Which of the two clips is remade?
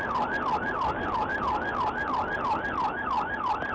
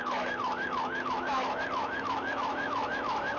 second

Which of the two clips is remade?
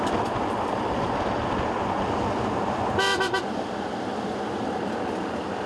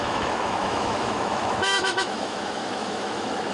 second